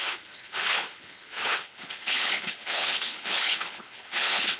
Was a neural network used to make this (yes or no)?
yes